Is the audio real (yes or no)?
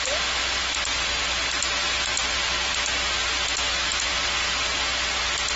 yes